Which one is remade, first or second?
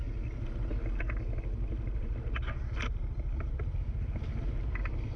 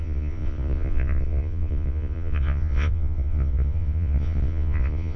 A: second